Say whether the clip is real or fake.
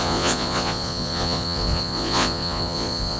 fake